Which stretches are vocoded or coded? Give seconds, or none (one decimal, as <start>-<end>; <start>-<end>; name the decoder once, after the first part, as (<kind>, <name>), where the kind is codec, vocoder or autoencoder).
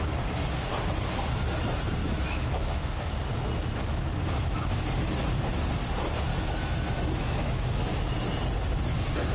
2.0-3.2 (autoencoder, DAC-VAE); 3.8-4.8; 6.3-8.1